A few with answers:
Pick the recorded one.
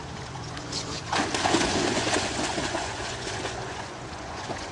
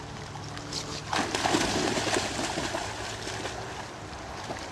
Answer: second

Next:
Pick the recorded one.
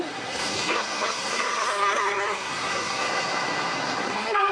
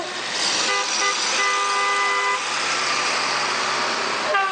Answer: second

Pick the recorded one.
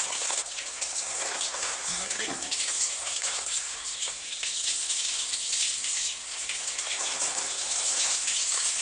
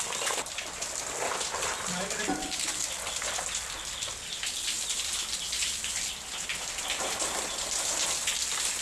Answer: second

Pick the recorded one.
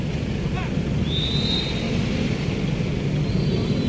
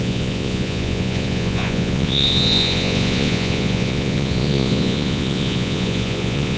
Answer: first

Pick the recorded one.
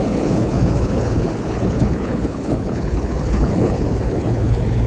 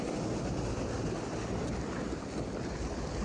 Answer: second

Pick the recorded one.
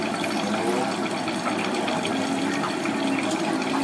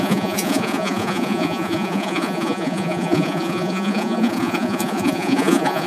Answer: first